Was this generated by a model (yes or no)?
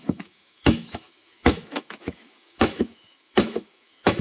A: yes